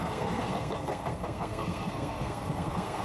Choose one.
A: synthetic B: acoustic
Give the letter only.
A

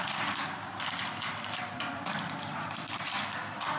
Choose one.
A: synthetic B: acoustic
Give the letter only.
A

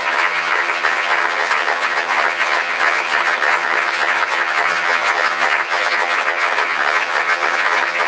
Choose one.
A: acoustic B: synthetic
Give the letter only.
B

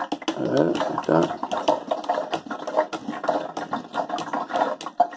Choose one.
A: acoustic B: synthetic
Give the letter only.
A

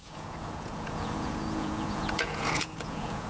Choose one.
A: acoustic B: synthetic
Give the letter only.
B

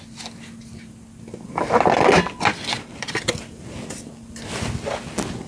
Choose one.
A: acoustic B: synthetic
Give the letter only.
A